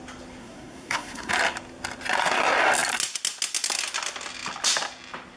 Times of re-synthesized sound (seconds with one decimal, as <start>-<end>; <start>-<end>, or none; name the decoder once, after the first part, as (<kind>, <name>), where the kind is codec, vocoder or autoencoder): 0.4-1.3 (codec, SNAC)